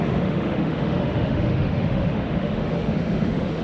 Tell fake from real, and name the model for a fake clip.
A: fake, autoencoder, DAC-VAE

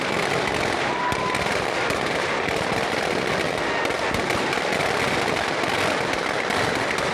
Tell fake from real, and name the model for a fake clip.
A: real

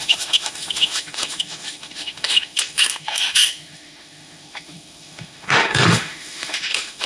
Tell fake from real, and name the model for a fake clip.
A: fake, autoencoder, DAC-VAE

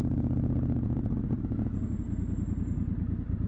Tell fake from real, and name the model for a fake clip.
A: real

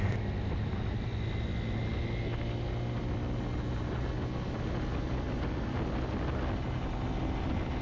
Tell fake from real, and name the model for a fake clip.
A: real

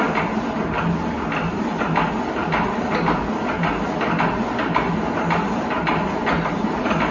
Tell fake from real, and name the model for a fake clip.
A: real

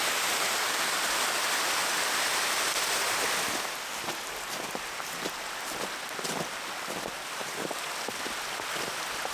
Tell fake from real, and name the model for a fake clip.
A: real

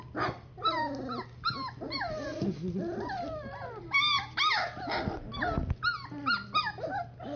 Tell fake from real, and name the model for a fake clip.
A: real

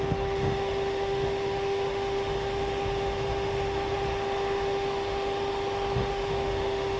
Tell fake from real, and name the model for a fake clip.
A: fake, autoencoder, DAC-VAE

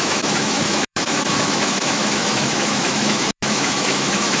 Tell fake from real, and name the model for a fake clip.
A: fake, autoencoder, DAC-VAE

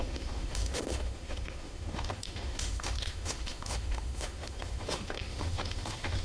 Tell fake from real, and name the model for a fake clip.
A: fake, autoencoder, DAC-VAE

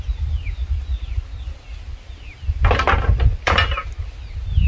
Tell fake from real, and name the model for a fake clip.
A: real